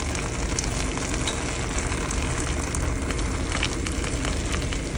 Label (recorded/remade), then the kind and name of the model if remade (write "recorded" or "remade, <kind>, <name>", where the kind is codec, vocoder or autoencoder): recorded